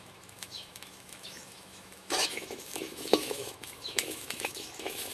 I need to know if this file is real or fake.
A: fake